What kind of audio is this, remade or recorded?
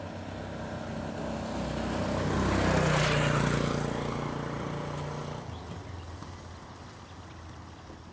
recorded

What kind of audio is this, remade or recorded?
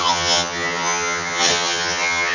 remade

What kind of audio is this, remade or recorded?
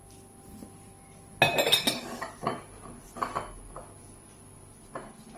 recorded